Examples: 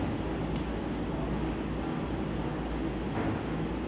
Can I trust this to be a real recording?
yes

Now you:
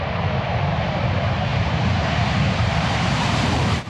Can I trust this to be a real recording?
no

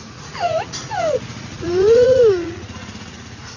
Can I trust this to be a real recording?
no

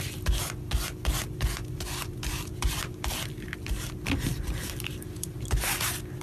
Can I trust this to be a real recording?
yes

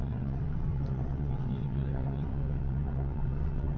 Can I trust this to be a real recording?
no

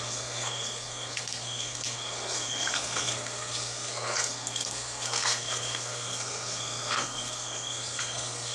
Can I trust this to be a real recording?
no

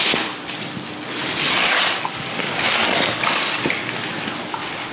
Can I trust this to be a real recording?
yes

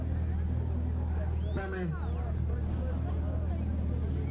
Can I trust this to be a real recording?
yes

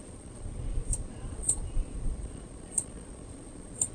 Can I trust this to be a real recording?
no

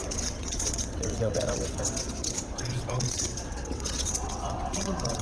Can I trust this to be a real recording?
no